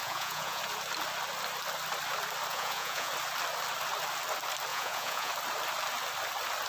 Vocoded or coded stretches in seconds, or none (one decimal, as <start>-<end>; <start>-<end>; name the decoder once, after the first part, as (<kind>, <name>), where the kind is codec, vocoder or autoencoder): 0.0-0.6 (vocoder, Vocos); 2.5-3.1; 4.7-5.3